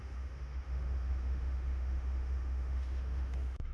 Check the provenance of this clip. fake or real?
fake